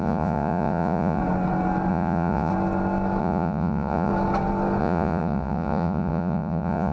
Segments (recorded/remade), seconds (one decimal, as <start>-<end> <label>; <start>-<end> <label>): 0.0-1.2 remade; 1.2-1.9 recorded; 1.9-2.5 remade; 2.5-3.2 recorded; 3.2-4.1 remade; 4.1-4.8 recorded; 4.8-6.9 remade